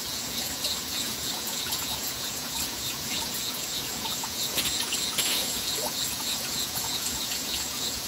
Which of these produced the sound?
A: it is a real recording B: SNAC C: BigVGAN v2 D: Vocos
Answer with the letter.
D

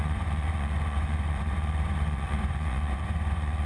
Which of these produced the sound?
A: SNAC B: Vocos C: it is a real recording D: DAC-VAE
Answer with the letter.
B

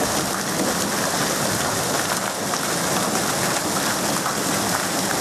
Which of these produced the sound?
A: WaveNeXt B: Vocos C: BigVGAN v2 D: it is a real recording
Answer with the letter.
D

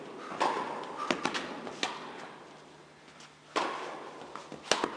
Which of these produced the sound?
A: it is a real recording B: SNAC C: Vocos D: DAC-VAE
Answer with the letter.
A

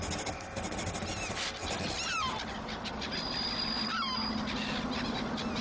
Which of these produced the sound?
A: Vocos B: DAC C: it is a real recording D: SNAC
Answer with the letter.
C